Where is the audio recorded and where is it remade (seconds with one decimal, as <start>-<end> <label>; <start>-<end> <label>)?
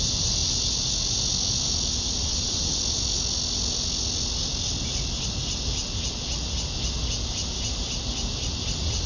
0.0-2.2 recorded; 2.2-2.8 remade; 2.8-9.1 recorded